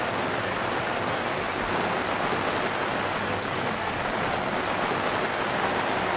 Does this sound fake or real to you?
real